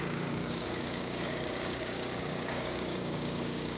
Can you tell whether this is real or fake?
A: fake